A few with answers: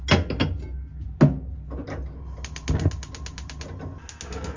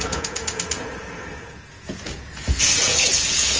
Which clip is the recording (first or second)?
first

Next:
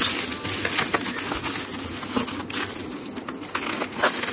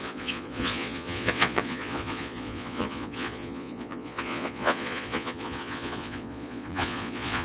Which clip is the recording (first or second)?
first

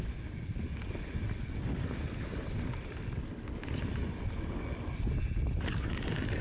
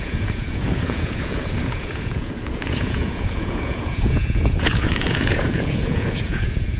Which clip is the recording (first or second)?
first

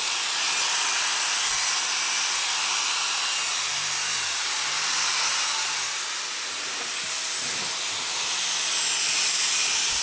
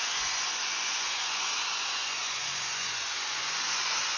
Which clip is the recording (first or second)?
first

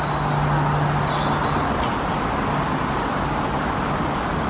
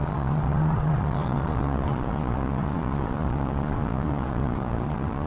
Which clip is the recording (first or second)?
first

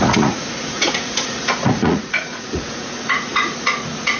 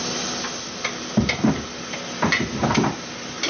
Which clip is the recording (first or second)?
second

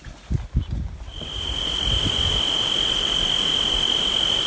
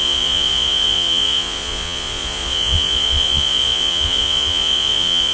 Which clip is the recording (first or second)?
first